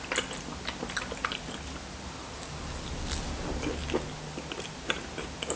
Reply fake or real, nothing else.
real